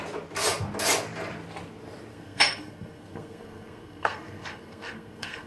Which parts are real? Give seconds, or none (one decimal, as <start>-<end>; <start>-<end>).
0.0-2.1